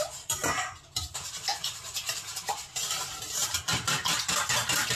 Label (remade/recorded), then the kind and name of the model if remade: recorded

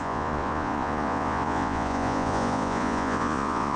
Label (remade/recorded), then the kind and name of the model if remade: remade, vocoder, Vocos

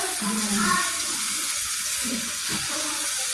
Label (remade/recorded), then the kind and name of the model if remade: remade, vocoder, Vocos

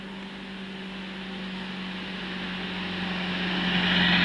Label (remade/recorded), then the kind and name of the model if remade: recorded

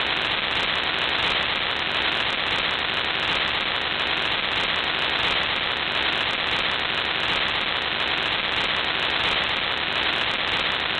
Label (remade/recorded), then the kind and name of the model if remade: recorded